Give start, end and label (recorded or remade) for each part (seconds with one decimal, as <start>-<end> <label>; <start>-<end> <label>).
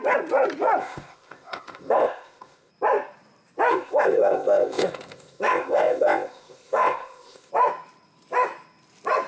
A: 0.0-0.8 recorded; 0.8-2.7 remade; 2.7-3.7 recorded; 3.7-7.5 remade; 7.5-9.3 recorded